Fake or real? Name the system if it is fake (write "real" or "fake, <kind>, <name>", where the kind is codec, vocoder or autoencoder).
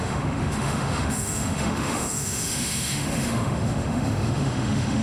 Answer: fake, autoencoder, DAC-VAE